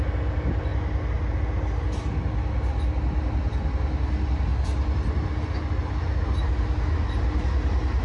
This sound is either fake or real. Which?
real